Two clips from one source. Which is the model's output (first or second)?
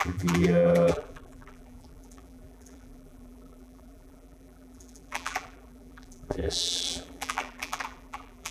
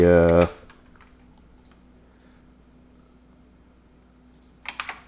first